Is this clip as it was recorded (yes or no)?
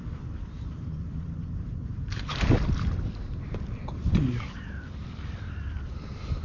no